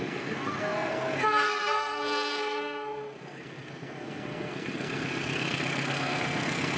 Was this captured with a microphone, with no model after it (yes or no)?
no